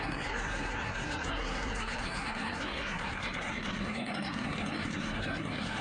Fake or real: fake